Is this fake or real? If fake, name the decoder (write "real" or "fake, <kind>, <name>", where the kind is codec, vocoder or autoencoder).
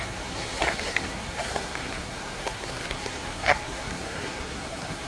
fake, codec, SNAC